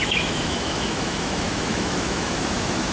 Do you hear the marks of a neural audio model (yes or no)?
yes